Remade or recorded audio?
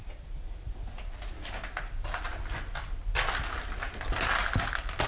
recorded